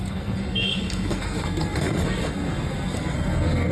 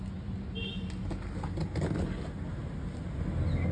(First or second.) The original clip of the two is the second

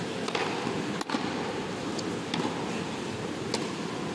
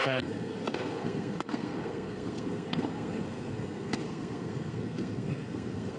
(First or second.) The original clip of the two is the first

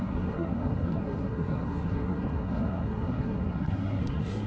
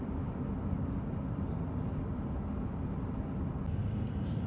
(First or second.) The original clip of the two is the second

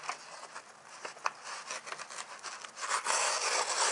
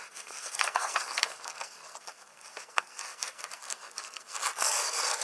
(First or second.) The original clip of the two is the first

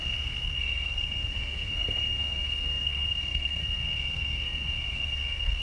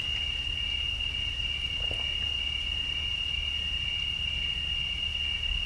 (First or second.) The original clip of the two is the second